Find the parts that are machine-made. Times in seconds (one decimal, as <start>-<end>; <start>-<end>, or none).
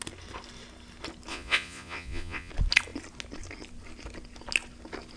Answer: 1.3-2.5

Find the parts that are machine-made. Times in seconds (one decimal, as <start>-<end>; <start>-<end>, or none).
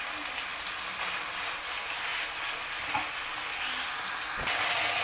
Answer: none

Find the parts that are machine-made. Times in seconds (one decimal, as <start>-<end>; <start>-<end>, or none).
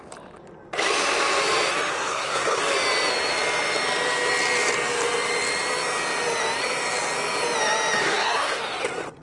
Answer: 1.9-2.6; 8.0-8.6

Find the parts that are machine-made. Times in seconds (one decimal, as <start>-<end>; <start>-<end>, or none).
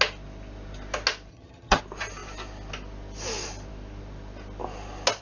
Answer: 1.3-1.8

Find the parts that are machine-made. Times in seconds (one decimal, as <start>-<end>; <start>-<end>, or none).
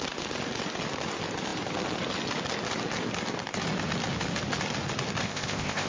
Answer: 5.2-5.9